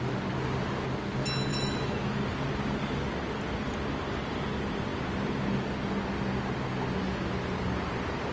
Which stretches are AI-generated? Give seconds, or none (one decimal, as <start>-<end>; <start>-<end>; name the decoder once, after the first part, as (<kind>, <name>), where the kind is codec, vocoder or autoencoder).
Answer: 1.5-2.2 (autoencoder, DAC-VAE)